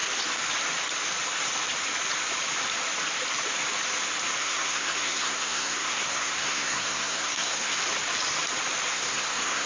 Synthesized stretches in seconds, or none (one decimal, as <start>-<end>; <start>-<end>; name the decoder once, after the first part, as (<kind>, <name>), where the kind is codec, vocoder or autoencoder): 4.4-7.7 (codec, SNAC); 8.9-9.7

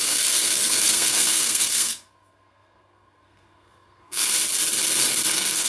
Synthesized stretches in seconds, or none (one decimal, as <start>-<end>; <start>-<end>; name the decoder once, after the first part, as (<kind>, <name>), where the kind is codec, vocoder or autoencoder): 0.0-4.3 (codec, SNAC); 5.3-5.7

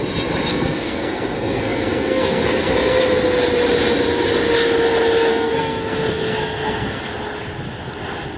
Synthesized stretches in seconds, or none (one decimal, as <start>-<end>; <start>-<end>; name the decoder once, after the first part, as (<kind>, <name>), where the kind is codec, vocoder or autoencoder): 0.5-3.0 (codec, SNAC); 5.3-7.1

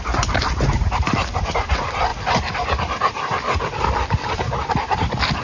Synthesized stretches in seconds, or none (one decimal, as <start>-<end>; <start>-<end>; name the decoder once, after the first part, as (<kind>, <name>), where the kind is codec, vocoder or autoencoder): none

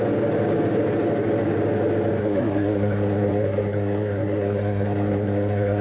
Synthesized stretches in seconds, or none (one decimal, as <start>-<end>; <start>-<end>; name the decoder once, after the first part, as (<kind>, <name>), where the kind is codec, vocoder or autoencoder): 2.2-5.8 (codec, SNAC)